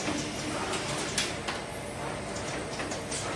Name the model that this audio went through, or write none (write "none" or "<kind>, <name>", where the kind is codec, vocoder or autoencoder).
none